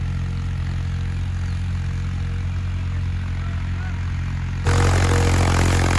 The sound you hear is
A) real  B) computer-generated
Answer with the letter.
A